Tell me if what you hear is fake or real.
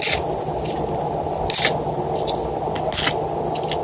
real